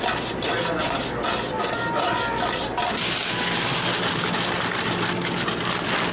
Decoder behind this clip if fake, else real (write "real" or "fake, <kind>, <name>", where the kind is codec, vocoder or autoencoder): real